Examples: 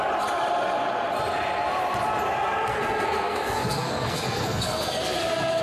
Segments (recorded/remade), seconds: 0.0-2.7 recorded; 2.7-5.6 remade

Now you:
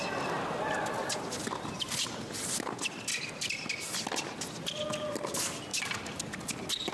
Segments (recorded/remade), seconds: 0.0-1.0 recorded; 1.0-2.2 remade; 2.2-5.7 recorded; 5.7-6.4 remade; 6.4-6.9 recorded

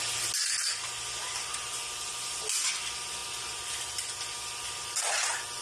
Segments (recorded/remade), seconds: 0.0-5.6 recorded

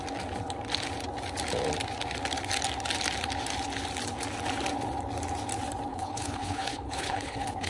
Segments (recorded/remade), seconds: 0.0-5.9 recorded; 5.9-7.7 remade

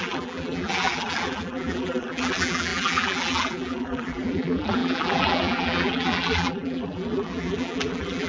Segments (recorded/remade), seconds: 0.0-8.3 remade